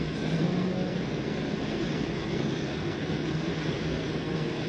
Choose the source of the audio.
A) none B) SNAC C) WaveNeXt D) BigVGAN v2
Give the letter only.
B